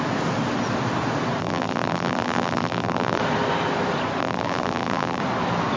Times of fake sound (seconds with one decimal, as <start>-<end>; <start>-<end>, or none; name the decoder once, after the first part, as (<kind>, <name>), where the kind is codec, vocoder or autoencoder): 1.4-3.2 (vocoder, BigVGAN v2); 4.2-5.2

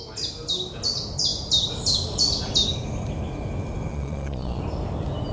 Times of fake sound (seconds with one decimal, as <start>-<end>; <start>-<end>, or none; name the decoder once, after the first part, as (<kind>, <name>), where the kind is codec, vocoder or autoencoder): 3.9-4.6 (vocoder, Vocos)

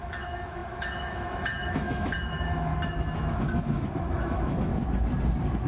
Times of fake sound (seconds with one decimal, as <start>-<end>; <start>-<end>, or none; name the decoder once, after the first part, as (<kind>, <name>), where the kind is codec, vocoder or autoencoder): 0.0-2.7 (autoencoder, DAC-VAE); 3.4-4.7

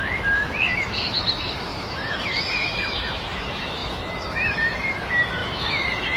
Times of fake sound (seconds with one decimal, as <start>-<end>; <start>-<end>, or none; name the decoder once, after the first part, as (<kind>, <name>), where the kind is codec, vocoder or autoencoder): 0.0-6.2 (autoencoder, DAC-VAE)